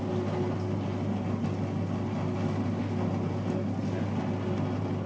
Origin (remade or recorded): recorded